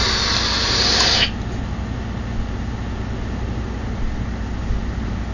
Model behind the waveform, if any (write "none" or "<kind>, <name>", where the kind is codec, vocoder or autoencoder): none